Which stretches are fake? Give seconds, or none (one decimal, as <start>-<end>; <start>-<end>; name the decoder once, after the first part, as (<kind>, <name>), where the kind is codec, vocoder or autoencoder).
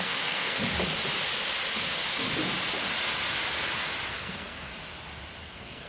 0.0-0.6 (codec, SNAC); 4.1-4.7; 5.4-5.9